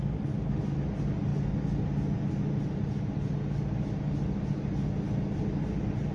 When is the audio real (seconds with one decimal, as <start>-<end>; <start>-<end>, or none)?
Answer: 0.0-6.1